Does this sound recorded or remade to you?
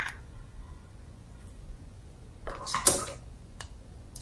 remade